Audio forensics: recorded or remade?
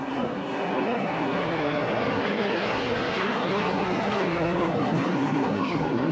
remade